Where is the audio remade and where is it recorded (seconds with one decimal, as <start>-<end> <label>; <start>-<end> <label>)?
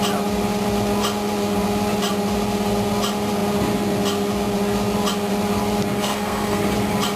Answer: 0.0-6.0 recorded; 6.0-6.6 remade; 6.6-7.2 recorded